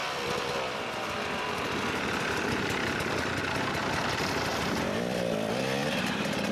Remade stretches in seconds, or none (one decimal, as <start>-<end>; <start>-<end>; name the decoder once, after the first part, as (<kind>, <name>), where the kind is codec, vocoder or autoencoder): 0.0-3.4 (vocoder, BigVGAN v2); 4.5-5.6